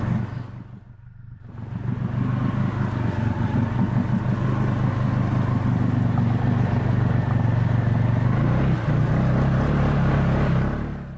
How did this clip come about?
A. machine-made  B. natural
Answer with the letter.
B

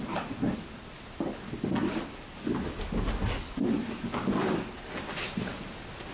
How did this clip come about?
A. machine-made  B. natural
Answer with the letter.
B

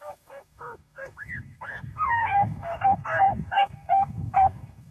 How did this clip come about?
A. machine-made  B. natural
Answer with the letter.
A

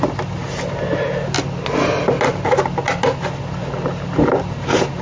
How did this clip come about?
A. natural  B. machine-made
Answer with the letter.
A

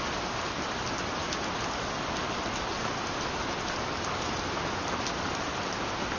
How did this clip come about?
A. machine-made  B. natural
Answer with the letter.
B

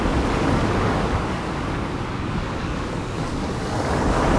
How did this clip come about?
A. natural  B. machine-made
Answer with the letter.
B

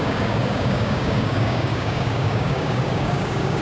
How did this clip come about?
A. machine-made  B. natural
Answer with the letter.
A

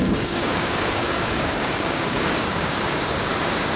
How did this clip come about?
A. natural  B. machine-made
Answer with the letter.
B